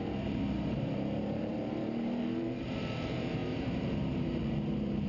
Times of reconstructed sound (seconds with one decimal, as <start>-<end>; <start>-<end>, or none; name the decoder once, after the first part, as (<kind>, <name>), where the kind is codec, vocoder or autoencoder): 0.0-5.1 (vocoder, BigVGAN v2)